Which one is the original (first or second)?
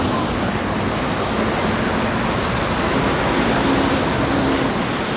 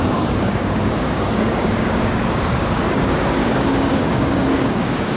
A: first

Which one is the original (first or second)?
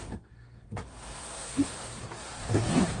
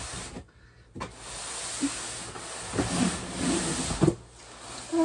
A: second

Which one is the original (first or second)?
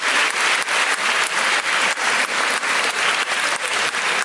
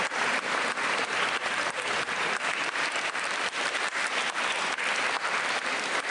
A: first